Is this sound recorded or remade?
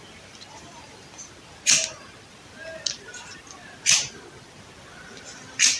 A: recorded